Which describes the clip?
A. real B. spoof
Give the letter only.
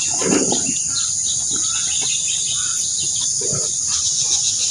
A